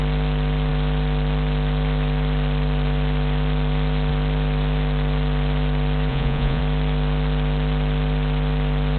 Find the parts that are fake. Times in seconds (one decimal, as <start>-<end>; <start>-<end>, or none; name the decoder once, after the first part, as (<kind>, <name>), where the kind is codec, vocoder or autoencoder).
6.1-6.6 (vocoder, Vocos)